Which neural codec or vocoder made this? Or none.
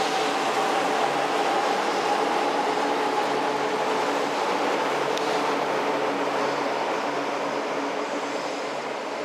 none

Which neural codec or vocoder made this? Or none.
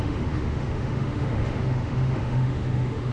autoencoder, DAC-VAE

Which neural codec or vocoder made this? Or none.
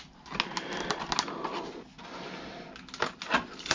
none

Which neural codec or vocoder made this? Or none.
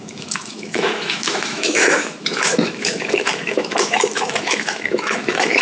autoencoder, DAC-VAE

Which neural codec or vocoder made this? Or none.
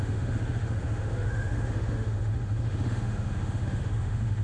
autoencoder, DAC-VAE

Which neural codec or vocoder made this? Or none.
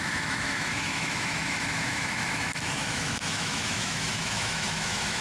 autoencoder, DAC-VAE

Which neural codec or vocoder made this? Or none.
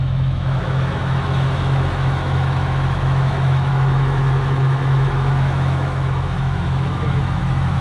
autoencoder, DAC-VAE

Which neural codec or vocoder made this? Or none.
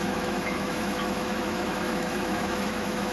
autoencoder, DAC-VAE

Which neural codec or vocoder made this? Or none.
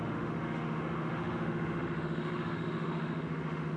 autoencoder, DAC-VAE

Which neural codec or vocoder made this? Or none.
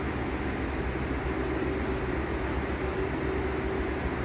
none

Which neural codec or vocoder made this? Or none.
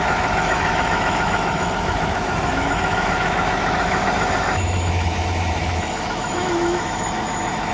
autoencoder, DAC-VAE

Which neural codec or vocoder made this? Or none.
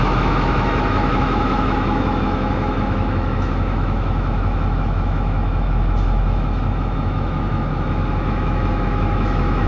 autoencoder, DAC-VAE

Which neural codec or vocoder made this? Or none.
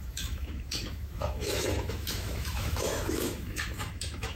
autoencoder, DAC-VAE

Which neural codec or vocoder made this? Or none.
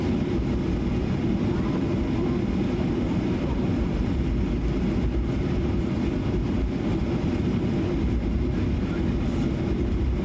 none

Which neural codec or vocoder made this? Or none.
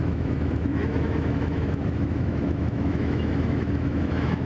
autoencoder, DAC-VAE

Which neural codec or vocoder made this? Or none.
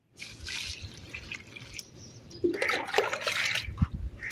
none